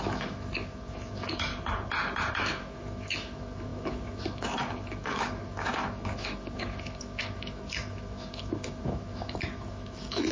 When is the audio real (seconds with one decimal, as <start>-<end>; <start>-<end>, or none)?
1.5-2.3